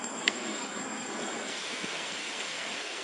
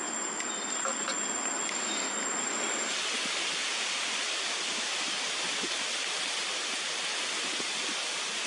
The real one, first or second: second